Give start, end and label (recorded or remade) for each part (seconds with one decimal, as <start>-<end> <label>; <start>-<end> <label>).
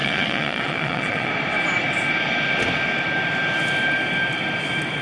0.0-1.3 remade; 1.3-5.0 recorded